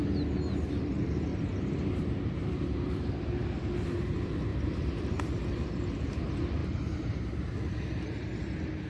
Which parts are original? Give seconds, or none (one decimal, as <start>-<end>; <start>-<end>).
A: 0.0-1.3; 2.9-4.5; 5.1-6.6